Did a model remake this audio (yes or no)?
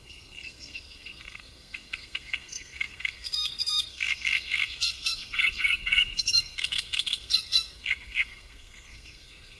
yes